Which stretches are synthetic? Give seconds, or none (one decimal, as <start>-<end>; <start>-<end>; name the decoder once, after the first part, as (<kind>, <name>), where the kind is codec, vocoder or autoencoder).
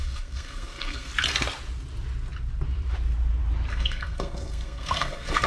0.0-1.1 (codec, SNAC); 3.7-5.5